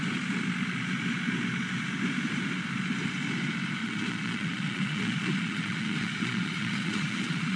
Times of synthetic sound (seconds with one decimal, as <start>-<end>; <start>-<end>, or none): 3.8-7.6

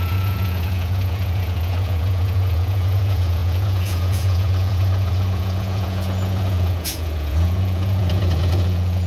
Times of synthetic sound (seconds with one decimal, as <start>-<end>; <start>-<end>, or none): 0.0-9.1

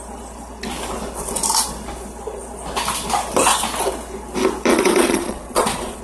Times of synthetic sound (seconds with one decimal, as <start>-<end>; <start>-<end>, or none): 4.7-6.0

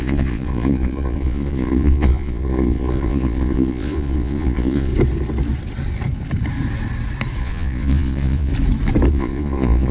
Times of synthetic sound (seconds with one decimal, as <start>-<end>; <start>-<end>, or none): 0.0-4.9; 7.4-8.5; 9.1-9.9

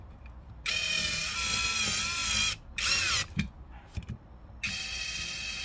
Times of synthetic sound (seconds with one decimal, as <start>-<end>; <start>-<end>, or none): none

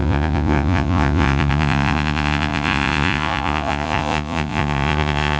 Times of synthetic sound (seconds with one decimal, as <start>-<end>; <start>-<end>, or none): 0.0-5.4

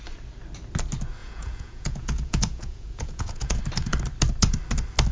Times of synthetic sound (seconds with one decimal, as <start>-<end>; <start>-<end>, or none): 1.2-3.6

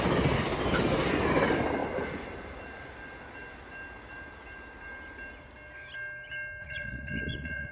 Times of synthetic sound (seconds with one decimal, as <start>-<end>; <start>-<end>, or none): 6.6-7.7